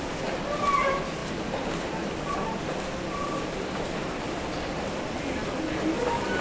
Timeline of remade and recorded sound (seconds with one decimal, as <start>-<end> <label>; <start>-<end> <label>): 0.0-6.4 recorded